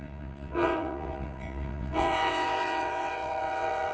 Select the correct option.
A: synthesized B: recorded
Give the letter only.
A